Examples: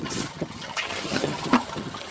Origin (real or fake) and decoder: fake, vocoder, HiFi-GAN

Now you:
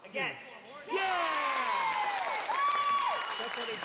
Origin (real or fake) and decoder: real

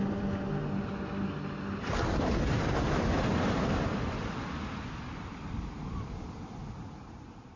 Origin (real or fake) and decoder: real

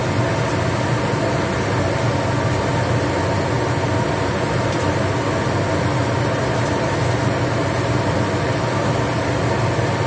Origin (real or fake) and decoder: real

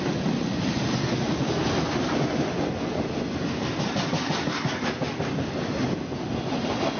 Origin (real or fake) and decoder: real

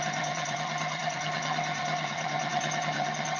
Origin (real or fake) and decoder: fake, vocoder, HiFi-GAN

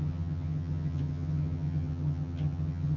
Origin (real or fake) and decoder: fake, vocoder, HiFi-GAN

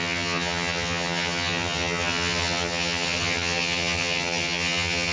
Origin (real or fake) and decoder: fake, vocoder, HiFi-GAN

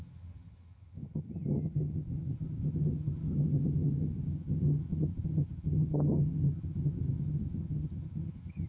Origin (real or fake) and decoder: fake, vocoder, HiFi-GAN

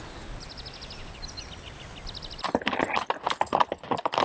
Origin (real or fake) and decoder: real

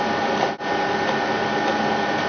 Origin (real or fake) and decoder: real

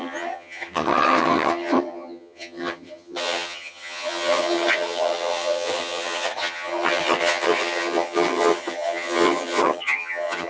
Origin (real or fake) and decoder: fake, vocoder, HiFi-GAN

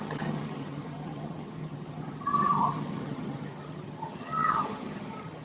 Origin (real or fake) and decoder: fake, vocoder, HiFi-GAN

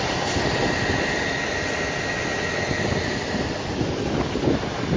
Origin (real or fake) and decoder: real